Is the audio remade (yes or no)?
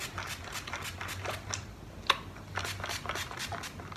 no